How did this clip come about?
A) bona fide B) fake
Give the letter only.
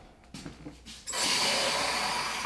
A